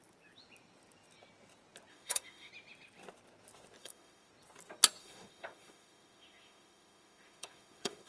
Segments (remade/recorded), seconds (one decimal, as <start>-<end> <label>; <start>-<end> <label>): 0.0-1.9 recorded; 1.9-2.5 remade; 2.5-3.8 recorded; 3.8-4.3 remade; 4.3-5.0 recorded; 5.0-8.1 remade